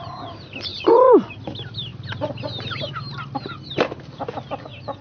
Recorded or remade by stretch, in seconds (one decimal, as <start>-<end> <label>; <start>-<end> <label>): 0.0-0.7 recorded; 0.7-1.4 remade; 1.4-5.0 recorded